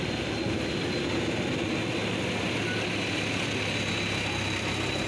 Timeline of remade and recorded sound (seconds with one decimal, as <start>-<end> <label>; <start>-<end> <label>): 0.0-5.1 recorded